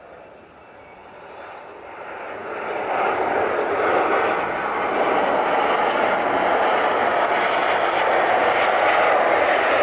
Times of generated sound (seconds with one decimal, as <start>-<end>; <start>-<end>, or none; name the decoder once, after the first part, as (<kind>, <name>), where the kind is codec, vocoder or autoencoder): none